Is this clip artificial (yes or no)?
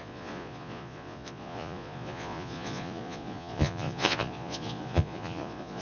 yes